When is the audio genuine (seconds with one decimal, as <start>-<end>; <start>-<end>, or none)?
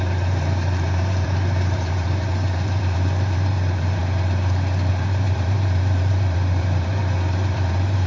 4.0-4.9